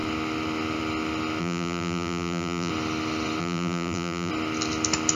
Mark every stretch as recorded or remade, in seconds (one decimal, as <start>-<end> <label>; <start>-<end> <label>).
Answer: 0.0-1.4 recorded; 1.4-2.7 remade; 2.7-3.4 recorded; 3.4-4.3 remade; 4.3-5.2 recorded